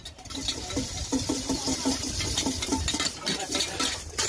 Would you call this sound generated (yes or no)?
no